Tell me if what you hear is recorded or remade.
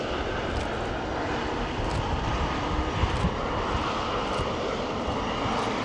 recorded